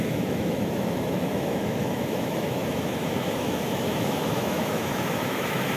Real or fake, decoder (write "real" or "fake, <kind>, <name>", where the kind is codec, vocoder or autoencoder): fake, autoencoder, DAC-VAE